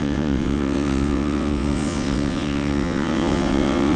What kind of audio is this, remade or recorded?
remade